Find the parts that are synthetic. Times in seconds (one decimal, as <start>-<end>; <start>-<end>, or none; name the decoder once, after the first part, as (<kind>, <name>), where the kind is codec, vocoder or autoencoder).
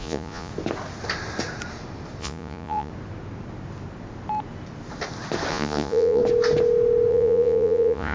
0.0-0.5 (vocoder, Vocos); 2.2-2.9; 5.5-6.2; 7.1-8.1